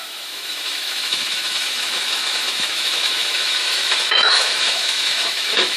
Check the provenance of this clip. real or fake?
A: fake